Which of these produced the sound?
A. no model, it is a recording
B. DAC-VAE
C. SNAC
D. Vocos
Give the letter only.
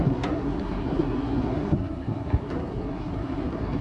C